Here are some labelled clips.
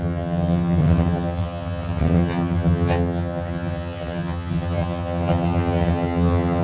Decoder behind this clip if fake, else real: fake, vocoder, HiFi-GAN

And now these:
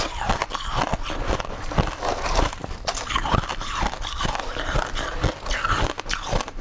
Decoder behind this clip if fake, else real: real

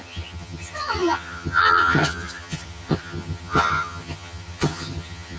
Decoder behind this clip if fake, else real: fake, vocoder, HiFi-GAN